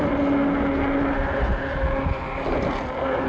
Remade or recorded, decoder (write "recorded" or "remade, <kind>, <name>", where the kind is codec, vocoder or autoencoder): recorded